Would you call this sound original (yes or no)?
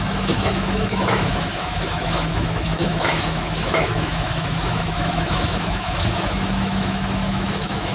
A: no